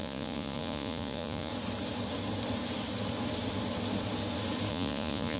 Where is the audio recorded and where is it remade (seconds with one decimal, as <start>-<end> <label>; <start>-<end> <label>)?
0.0-1.5 remade; 1.5-4.7 recorded; 4.7-5.4 remade